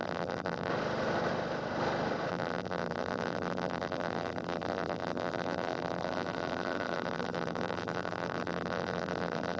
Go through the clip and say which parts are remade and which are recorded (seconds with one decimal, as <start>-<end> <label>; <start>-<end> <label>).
0.0-0.7 remade; 0.7-2.3 recorded; 2.3-9.6 remade